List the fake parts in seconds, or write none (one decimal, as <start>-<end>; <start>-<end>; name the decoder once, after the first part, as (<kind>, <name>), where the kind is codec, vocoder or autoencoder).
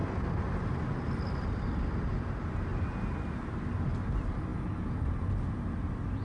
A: none